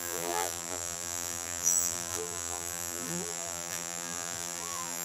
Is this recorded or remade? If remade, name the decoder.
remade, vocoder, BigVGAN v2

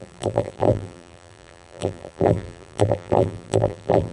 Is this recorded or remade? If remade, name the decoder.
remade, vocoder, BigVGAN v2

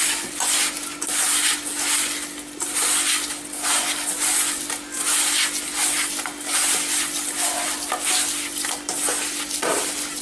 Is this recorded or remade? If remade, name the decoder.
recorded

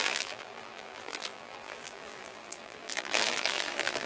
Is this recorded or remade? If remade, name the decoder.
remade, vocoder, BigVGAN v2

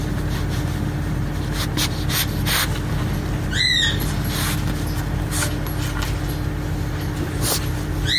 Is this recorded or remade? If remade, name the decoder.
recorded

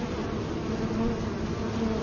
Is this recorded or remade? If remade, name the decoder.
recorded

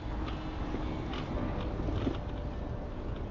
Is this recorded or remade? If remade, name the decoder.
recorded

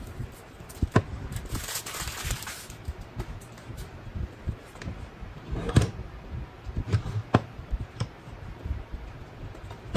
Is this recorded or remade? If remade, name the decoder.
remade, vocoder, BigVGAN v2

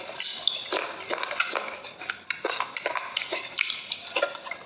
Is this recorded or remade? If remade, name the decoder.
remade, vocoder, BigVGAN v2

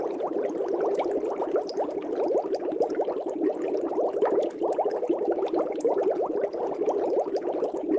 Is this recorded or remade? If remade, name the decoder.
recorded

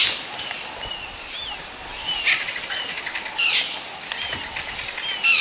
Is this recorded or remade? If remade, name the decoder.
recorded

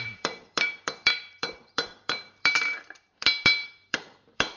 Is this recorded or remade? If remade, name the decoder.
remade, vocoder, BigVGAN v2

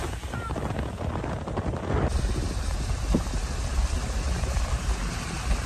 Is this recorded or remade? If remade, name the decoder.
recorded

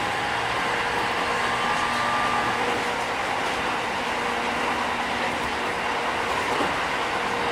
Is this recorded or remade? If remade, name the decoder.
recorded